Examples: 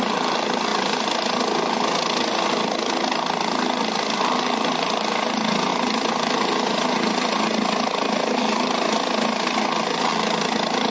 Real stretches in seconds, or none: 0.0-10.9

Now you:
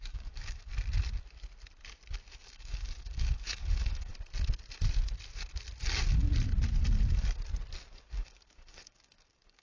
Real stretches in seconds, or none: 0.7-2.4; 4.1-7.9

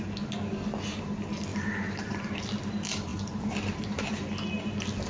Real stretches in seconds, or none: 0.0-1.5; 2.3-3.1; 4.3-5.1

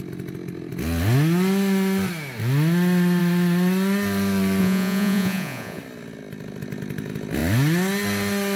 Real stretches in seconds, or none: 0.0-4.6; 5.8-8.6

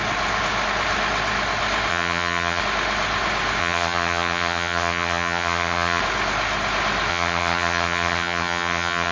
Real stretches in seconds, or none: 0.0-1.9; 2.6-3.6; 6.0-7.1

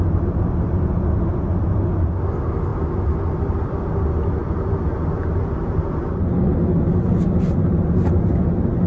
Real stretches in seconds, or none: 0.0-8.9

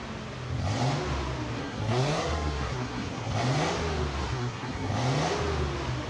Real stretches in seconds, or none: 0.0-1.6; 3.3-4.2; 4.9-6.1

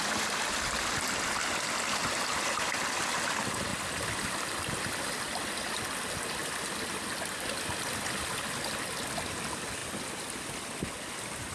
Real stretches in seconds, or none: 0.0-11.5